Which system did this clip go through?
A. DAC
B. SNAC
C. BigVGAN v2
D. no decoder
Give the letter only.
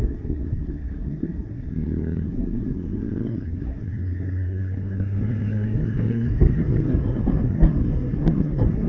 B